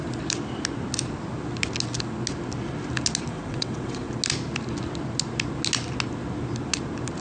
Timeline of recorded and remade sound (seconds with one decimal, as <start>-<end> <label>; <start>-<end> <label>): 0.0-3.3 recorded; 3.3-4.1 remade; 4.1-7.2 recorded